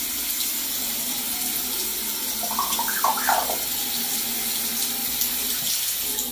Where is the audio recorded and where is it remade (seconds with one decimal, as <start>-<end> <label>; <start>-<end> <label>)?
0.0-6.3 recorded